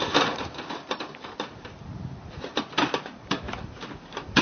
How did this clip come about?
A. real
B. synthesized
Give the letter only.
B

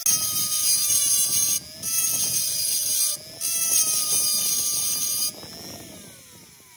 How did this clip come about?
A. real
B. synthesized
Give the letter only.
A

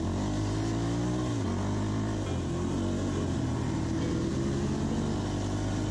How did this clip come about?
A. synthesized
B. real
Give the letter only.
B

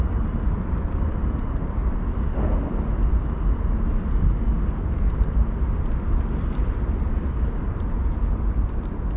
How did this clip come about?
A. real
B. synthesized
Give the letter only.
A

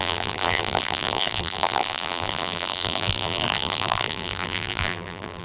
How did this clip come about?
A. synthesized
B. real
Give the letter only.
A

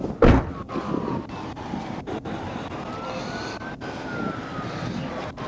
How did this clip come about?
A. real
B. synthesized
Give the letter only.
A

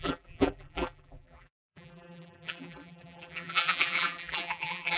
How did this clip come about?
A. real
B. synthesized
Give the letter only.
B